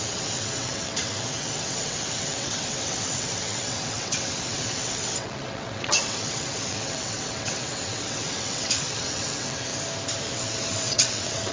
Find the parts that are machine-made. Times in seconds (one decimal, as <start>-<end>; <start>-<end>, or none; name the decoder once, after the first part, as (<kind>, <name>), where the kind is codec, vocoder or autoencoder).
0.0-9.7 (vocoder, WaveNeXt); 10.3-11.5